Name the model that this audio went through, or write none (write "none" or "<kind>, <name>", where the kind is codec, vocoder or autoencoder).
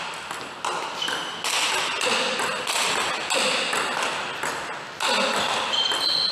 none